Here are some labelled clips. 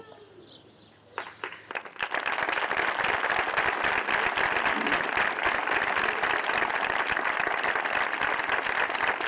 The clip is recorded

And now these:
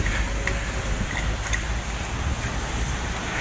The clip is recorded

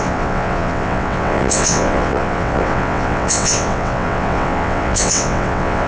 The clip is remade